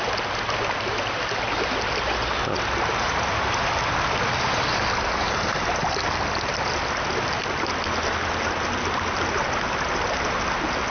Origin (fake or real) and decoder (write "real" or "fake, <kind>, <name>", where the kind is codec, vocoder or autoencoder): real